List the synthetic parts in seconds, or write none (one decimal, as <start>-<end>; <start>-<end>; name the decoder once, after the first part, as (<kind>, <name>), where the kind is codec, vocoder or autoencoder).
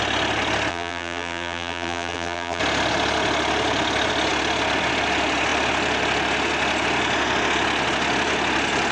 0.7-2.6 (vocoder, BigVGAN v2)